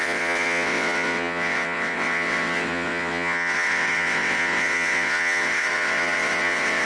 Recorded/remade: remade